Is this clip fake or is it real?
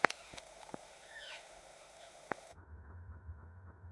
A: fake